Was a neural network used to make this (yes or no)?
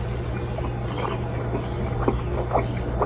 no